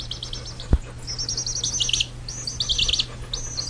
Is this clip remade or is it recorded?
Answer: recorded